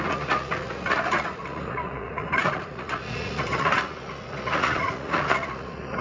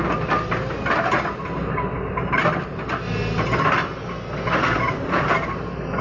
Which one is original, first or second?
second